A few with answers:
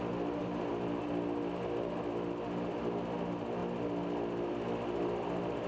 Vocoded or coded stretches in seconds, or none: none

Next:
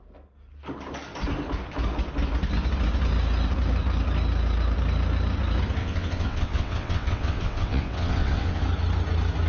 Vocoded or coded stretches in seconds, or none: 5.8-8.6

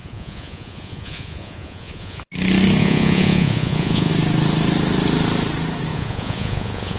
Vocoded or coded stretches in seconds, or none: 0.0-2.2; 2.8-4.1; 5.9-7.0